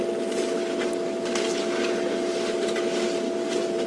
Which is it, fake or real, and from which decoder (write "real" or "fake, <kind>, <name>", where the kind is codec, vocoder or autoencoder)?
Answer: real